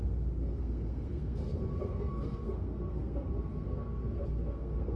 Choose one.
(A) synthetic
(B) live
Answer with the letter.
A